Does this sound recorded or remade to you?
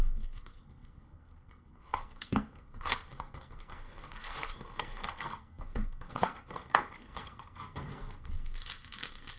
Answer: remade